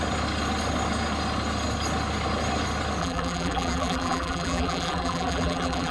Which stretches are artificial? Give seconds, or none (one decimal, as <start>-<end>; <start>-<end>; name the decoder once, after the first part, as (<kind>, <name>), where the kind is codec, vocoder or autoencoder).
3.0-5.9 (vocoder, BigVGAN v2)